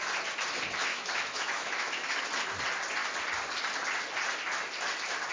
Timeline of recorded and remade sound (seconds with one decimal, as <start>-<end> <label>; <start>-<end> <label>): 0.0-0.9 recorded; 0.9-2.2 remade; 2.2-5.3 recorded